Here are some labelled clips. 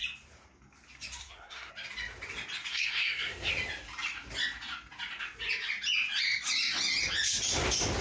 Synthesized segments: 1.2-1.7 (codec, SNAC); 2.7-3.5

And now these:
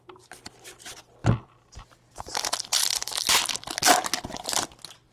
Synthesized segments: 1.2-3.7 (vocoder, BigVGAN v2)